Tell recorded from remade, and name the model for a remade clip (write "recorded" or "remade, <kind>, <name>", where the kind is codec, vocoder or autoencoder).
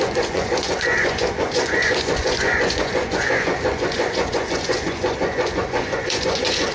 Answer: remade, vocoder, Vocos